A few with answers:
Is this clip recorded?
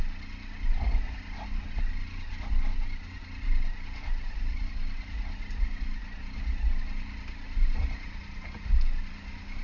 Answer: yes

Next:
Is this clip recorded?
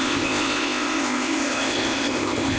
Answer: no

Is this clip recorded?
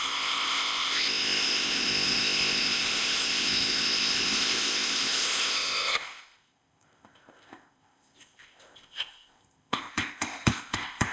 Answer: no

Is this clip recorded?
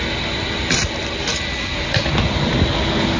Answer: yes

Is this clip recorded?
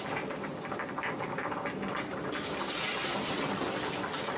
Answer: yes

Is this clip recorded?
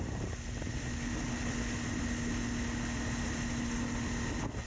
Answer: yes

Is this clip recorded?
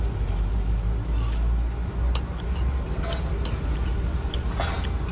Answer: yes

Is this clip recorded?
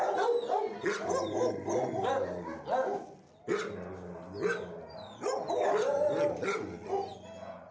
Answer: yes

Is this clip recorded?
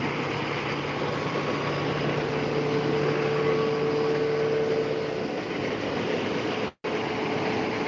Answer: yes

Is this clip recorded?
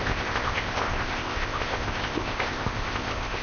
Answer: no